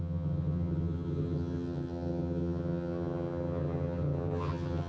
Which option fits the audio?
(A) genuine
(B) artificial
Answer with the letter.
B